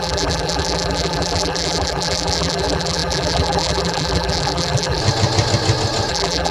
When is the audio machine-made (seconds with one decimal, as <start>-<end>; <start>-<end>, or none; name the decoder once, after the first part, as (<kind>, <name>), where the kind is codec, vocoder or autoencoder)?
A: 0.0-5.0 (vocoder, BigVGAN v2); 6.1-6.5